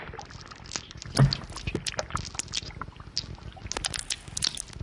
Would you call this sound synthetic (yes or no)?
no